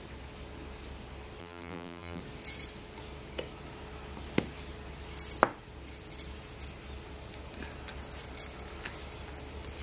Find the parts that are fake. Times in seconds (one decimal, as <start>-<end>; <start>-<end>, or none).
1.4-2.2